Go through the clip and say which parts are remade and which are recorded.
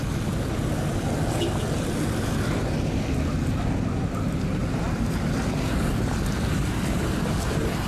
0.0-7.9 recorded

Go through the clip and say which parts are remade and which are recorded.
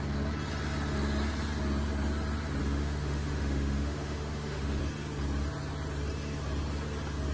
0.0-2.6 recorded; 2.6-4.8 remade; 4.8-7.3 recorded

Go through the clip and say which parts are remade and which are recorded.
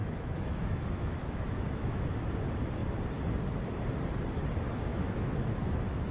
0.0-2.1 remade; 2.1-4.9 recorded; 4.9-6.1 remade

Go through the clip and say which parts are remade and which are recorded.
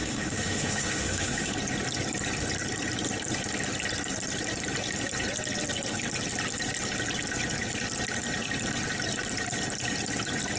0.0-1.5 remade; 1.5-10.6 recorded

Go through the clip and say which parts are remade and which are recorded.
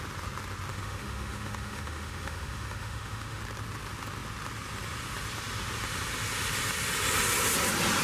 0.0-0.7 recorded; 0.7-3.4 remade; 3.4-8.0 recorded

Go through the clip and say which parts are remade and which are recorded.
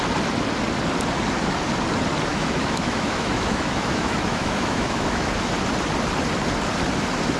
0.0-2.3 recorded; 2.3-5.3 remade; 5.3-7.4 recorded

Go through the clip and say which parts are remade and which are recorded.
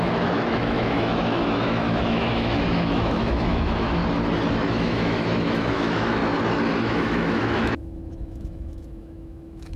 0.0-4.0 remade; 4.0-4.7 recorded; 4.7-6.2 remade; 6.2-6.8 recorded; 6.8-9.8 remade